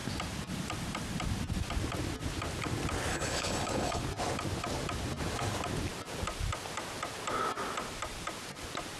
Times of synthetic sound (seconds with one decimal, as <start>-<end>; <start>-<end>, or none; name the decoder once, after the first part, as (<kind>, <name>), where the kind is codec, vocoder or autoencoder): 3.1-4.0 (codec, HILCodec)